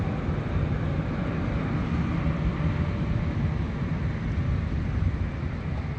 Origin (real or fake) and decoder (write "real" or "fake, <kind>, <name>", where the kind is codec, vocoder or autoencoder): real